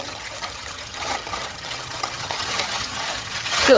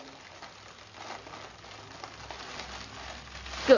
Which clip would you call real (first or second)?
second